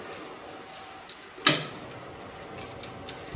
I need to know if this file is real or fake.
real